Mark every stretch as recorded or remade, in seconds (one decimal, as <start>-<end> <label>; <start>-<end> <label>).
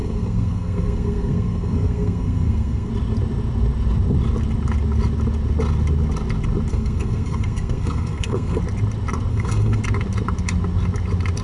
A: 0.0-2.9 remade; 2.9-6.7 recorded; 6.7-8.6 remade; 8.6-9.3 recorded; 9.3-9.8 remade; 9.8-11.4 recorded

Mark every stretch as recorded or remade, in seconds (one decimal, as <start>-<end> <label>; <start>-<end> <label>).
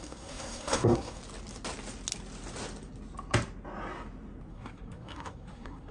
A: 0.0-1.2 remade; 1.2-4.5 recorded; 4.5-5.9 remade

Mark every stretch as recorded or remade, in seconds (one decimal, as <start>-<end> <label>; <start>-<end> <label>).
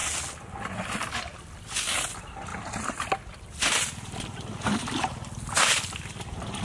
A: 0.0-6.6 recorded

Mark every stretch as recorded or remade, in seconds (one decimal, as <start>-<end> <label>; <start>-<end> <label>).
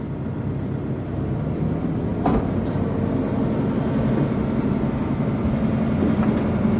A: 0.0-6.8 recorded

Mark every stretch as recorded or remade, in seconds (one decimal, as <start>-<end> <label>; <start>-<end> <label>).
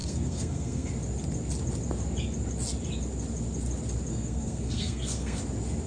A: 0.0-0.9 remade; 0.9-4.1 recorded; 4.1-5.4 remade; 5.4-5.9 recorded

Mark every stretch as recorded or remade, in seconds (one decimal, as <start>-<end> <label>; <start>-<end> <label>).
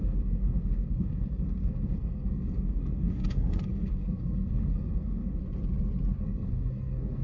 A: 0.0-5.4 remade; 5.4-6.2 recorded; 6.2-7.2 remade